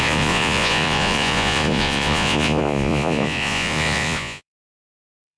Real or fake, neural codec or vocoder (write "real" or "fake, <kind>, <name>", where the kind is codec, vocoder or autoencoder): fake, vocoder, Vocos